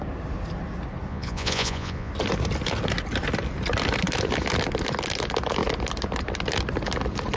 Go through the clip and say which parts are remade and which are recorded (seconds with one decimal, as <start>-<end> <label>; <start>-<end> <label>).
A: 0.0-1.1 recorded; 1.1-2.1 remade; 2.1-7.4 recorded